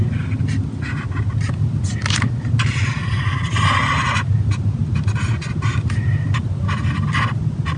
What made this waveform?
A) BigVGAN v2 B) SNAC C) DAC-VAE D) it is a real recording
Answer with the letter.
D